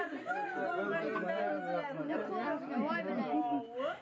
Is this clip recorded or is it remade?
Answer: recorded